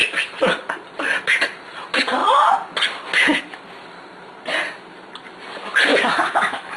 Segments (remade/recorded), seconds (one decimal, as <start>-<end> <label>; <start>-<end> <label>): 0.0-5.9 recorded; 5.9-6.8 remade